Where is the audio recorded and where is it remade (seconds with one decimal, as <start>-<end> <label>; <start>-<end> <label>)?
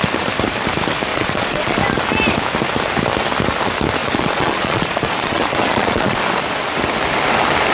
0.0-1.1 recorded; 1.1-1.8 remade; 1.8-4.0 recorded; 4.0-6.2 remade; 6.2-7.7 recorded